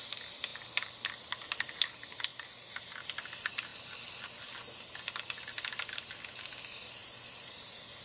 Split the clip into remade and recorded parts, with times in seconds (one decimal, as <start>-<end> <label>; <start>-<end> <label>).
0.0-2.3 recorded; 2.3-2.8 remade; 2.8-7.0 recorded; 7.0-8.0 remade